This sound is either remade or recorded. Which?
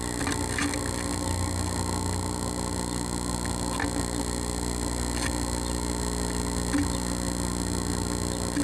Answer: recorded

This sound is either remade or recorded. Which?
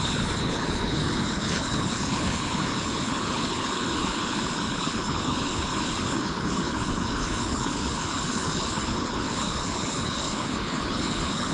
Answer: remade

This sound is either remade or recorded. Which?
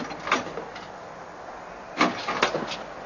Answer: recorded